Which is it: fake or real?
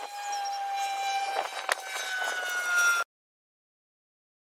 real